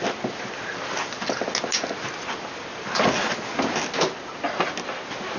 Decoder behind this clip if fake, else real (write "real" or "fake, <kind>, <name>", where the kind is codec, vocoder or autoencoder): real